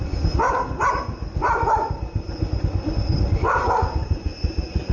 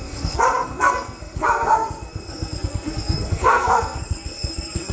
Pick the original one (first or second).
first